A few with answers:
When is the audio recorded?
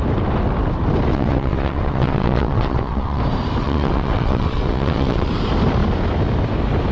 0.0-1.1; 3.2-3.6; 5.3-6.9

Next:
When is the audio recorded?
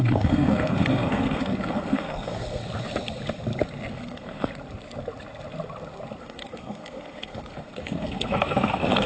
2.6-3.9; 4.5-6.2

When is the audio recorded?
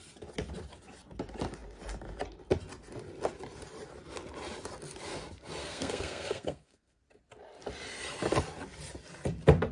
0.0-5.6; 7.0-9.7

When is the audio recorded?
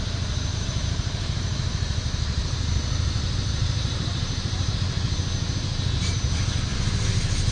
0.0-0.5; 4.7-7.5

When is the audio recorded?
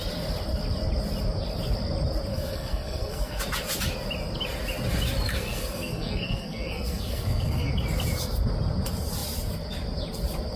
0.0-2.3; 3.4-5.3; 7.7-10.6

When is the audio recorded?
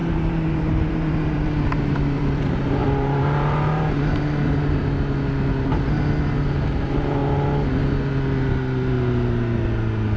2.4-2.8; 4.6-10.2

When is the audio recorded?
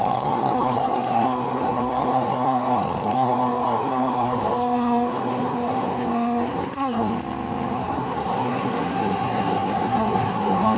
7.1-7.8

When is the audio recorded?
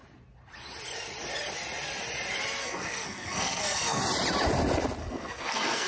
0.0-2.6; 4.0-5.0